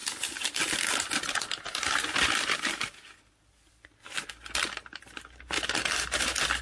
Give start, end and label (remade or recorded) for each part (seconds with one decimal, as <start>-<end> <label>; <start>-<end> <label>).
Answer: 0.0-6.6 recorded